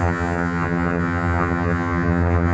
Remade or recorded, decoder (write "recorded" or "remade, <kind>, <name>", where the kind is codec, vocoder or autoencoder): remade, vocoder, HiFi-GAN